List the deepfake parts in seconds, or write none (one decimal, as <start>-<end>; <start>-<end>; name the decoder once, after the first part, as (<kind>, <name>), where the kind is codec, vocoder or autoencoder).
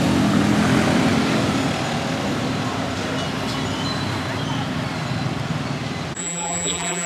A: 6.2-7.1 (vocoder, BigVGAN v2)